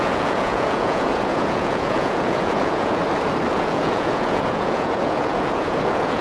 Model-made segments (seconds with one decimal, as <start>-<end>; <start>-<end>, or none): 0.0-3.0; 3.5-6.2